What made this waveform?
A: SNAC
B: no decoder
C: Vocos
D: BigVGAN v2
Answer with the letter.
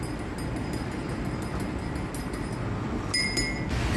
B